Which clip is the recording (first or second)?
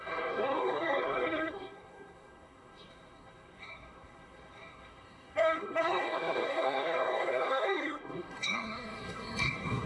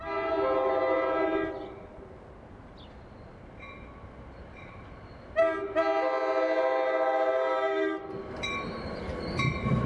second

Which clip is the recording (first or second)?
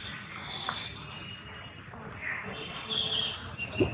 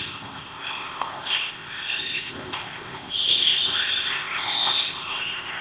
first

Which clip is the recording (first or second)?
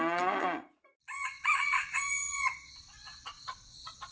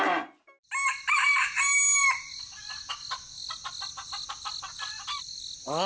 second